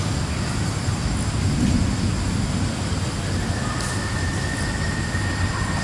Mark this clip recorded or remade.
recorded